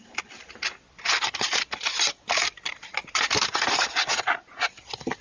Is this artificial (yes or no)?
no